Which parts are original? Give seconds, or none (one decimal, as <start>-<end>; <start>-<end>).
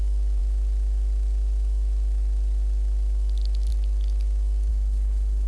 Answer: 0.0-4.7